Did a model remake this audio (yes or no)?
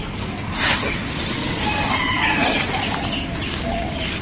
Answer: no